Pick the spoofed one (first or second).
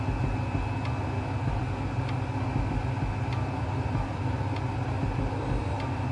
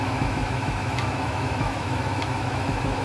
second